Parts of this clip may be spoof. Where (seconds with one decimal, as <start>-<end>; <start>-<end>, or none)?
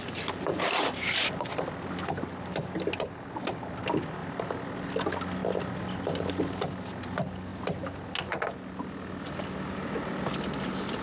none